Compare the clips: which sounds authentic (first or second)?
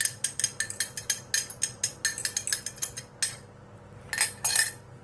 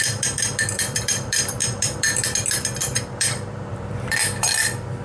first